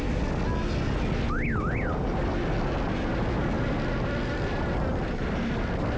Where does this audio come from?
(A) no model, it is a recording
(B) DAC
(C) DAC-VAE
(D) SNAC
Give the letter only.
A